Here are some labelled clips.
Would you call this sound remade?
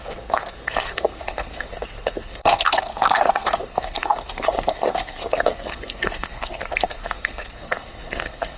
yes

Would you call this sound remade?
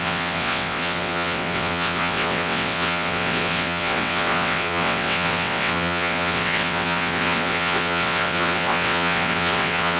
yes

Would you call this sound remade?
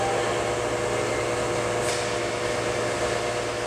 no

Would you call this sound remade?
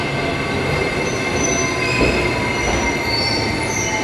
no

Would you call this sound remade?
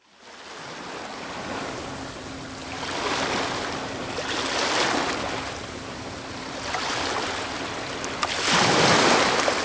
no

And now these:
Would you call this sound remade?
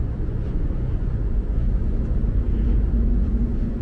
yes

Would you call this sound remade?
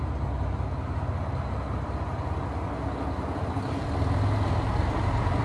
no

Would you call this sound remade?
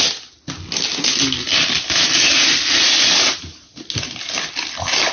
no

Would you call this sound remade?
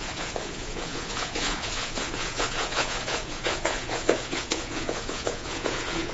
yes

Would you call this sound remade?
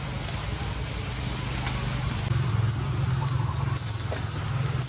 no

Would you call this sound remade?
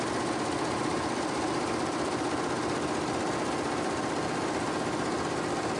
no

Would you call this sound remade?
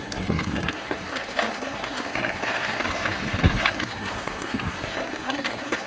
yes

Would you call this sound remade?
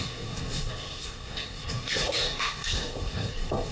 yes